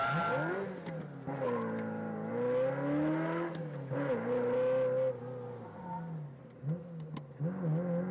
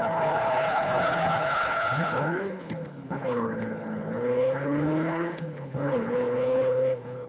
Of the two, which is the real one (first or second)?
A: first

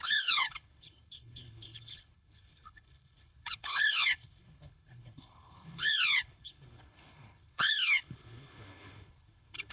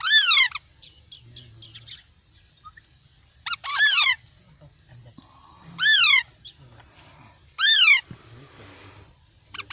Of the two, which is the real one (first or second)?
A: second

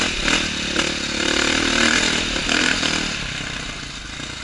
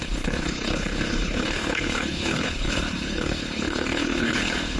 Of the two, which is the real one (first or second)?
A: first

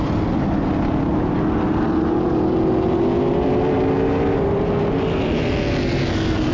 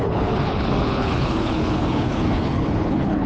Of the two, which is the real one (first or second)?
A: first